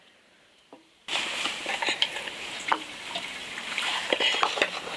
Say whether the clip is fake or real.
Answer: fake